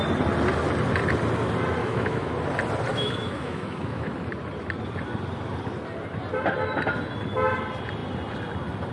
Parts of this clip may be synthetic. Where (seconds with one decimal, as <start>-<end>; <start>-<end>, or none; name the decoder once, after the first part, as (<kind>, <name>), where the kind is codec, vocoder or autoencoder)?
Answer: 1.8-2.3 (autoencoder, DAC-VAE); 2.9-4.1

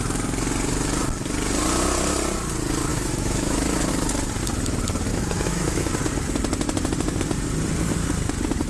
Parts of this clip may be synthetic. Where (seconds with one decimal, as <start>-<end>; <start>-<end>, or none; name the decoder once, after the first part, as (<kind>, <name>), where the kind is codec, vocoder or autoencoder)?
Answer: 2.9-3.9 (autoencoder, DAC-VAE); 5.1-5.9

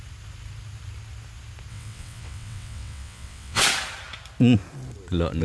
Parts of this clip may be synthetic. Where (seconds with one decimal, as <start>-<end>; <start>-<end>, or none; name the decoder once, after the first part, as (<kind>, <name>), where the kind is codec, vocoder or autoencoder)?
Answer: 1.7-3.6 (vocoder, WaveNeXt)

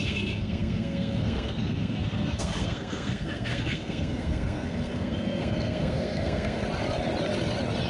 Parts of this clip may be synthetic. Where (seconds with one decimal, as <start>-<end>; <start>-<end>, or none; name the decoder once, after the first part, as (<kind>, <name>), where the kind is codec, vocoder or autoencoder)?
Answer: 0.0-6.6 (codec, SNAC)

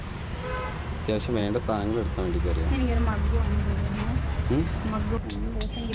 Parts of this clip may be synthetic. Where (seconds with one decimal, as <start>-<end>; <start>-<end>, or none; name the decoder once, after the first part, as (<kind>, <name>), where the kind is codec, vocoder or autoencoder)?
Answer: 0.0-1.4 (vocoder, BigVGAN v2); 2.4-4.3

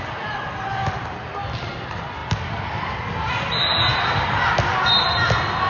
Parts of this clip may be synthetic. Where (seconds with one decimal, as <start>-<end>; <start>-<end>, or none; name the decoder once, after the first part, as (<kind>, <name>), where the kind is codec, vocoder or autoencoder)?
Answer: none